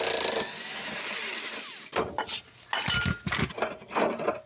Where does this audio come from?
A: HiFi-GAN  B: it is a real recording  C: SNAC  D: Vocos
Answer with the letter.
B